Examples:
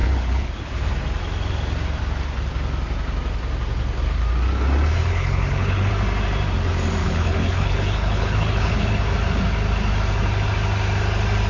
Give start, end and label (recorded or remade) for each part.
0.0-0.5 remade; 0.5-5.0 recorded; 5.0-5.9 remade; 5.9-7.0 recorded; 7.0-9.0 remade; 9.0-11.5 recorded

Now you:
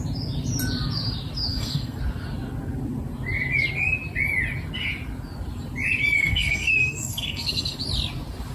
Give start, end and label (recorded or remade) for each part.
0.0-1.5 recorded; 1.5-2.0 remade; 2.0-6.2 recorded; 6.2-7.8 remade; 7.8-8.5 recorded

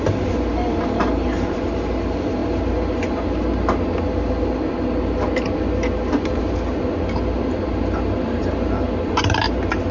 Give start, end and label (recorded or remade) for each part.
0.0-9.9 recorded